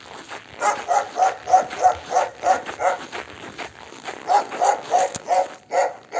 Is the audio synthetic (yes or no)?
no